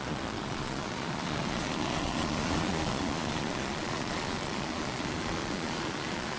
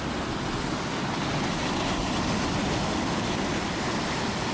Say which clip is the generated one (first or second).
first